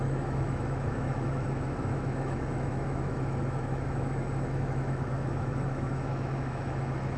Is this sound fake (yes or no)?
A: yes